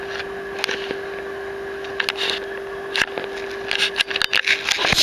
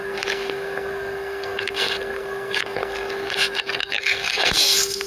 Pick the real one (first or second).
first